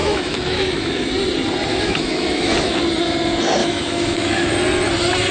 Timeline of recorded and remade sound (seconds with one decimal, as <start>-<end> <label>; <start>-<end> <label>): 0.0-1.1 remade; 1.1-1.7 recorded; 1.7-2.8 remade; 2.8-3.6 recorded; 3.6-4.5 remade; 4.5-5.3 recorded